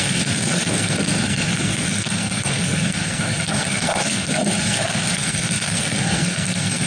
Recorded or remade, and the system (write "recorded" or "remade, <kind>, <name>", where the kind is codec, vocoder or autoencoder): remade, codec, SNAC